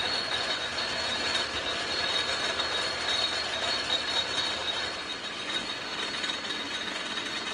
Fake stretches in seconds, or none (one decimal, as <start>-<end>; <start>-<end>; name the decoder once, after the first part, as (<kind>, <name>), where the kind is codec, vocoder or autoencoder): 0.0-0.7 (vocoder, Vocos); 5.2-5.9; 6.6-7.5